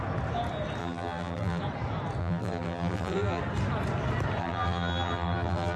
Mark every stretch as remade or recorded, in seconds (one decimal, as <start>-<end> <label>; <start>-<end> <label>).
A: 0.0-0.8 recorded; 0.8-1.6 remade; 1.6-2.2 recorded; 2.2-3.4 remade; 3.4-4.4 recorded; 4.4-5.8 remade